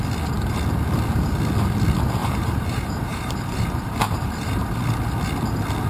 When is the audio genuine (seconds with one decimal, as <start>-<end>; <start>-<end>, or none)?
0.0-2.2; 4.6-5.9